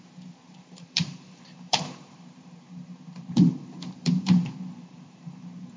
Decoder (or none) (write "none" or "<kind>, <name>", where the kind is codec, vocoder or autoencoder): vocoder, BigVGAN v2